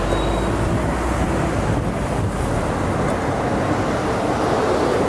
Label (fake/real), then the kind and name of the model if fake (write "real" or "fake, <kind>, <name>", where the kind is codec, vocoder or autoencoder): real